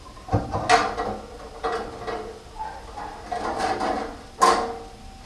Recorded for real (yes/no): yes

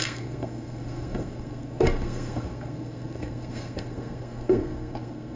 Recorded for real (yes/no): no